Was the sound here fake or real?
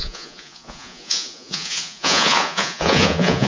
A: fake